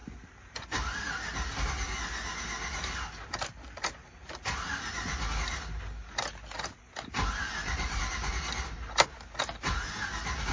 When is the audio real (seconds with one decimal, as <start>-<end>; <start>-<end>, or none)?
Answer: 1.0-7.6; 8.3-10.5